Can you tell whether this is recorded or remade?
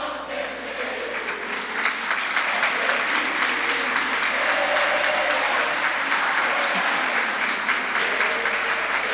recorded